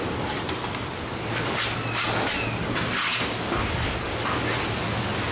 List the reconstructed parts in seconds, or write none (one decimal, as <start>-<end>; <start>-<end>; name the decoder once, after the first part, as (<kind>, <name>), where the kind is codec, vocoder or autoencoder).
none